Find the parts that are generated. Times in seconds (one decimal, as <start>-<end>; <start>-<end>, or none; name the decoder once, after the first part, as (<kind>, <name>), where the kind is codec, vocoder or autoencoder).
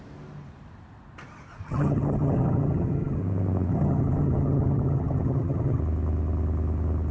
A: 1.6-3.2 (vocoder, HiFi-GAN); 3.7-5.8